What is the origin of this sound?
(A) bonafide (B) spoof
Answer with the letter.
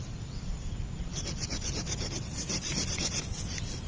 A